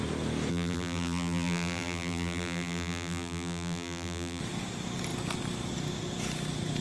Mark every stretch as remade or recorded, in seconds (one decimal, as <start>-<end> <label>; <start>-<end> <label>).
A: 0.0-0.5 recorded; 0.5-4.4 remade; 4.4-6.8 recorded

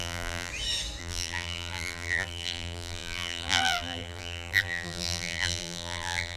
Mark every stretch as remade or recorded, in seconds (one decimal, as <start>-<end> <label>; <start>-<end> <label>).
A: 0.0-0.5 remade; 0.5-1.0 recorded; 1.0-6.4 remade